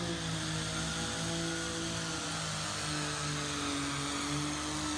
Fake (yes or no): no